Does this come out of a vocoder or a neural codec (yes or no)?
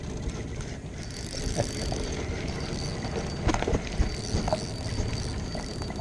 no